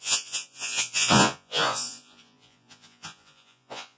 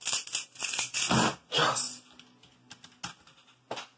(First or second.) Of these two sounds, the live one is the second